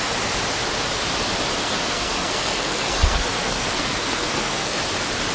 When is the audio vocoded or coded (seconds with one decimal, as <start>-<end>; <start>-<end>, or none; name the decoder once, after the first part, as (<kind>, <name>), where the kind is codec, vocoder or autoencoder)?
1.6-4.8 (codec, SNAC)

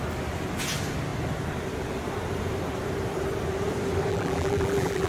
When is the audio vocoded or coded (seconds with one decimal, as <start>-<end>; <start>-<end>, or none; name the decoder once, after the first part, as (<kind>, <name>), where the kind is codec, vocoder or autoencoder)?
4.1-5.1 (vocoder, BigVGAN v2)